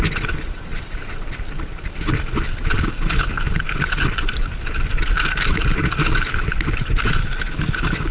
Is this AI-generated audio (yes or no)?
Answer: no